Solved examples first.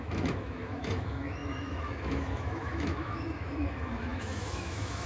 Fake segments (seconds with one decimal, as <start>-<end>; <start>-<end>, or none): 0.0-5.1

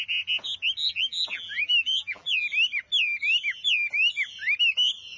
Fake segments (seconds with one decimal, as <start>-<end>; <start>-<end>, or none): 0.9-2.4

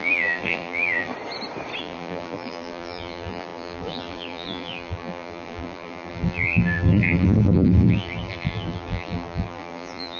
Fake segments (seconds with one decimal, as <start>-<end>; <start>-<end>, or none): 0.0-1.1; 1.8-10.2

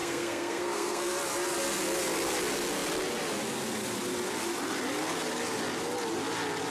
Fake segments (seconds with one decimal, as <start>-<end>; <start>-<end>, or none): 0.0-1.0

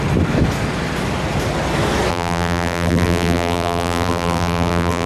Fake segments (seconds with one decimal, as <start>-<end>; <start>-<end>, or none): 2.1-5.1

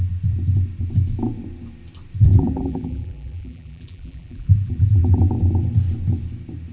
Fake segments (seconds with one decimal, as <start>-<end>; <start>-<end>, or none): 2.2-5.2